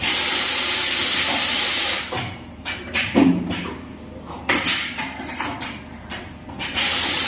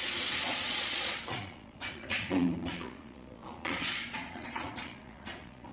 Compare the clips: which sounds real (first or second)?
first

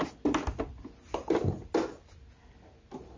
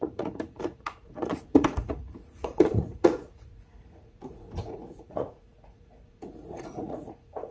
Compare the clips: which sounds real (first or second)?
first